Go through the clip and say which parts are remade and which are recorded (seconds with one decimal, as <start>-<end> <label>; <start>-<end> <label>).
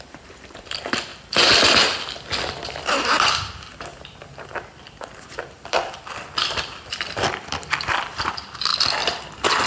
0.0-8.7 remade; 8.7-9.7 recorded